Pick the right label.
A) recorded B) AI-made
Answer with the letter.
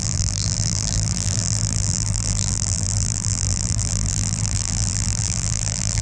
B